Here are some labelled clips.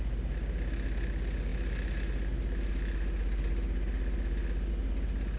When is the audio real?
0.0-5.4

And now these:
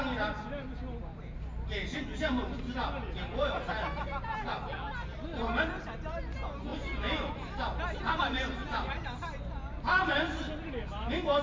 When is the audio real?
0.0-11.4

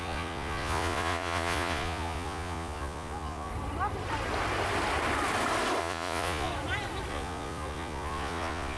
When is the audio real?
3.5-5.8; 6.5-7.1

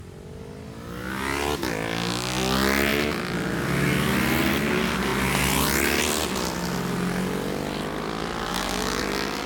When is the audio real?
0.0-8.5; 9.0-9.5

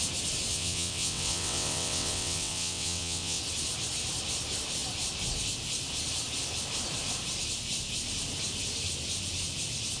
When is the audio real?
0.0-0.5; 3.4-10.0

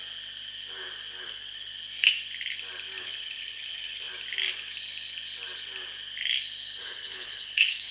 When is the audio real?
0.0-1.2; 1.7-3.0; 4.1-6.8

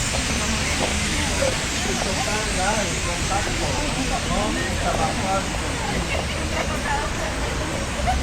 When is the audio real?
0.0-0.9; 1.4-8.2

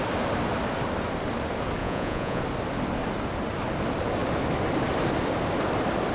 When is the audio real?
0.0-1.8; 2.4-6.1